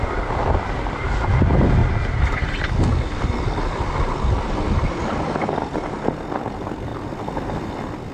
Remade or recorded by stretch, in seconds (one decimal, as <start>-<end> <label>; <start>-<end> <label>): 0.0-8.1 recorded